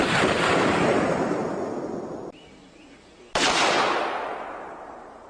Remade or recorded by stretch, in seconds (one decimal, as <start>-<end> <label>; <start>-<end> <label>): 0.0-1.4 remade; 1.4-4.1 recorded; 4.1-5.3 remade